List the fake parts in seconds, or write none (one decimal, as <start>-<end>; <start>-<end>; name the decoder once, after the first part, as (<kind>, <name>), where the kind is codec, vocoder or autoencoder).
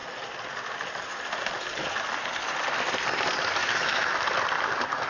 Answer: 3.6-4.2 (autoencoder, DAC-VAE)